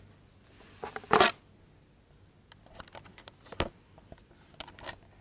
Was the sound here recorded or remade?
recorded